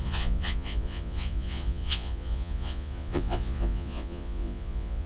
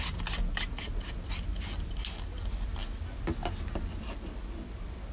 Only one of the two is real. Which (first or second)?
second